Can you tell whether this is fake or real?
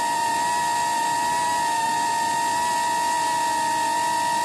real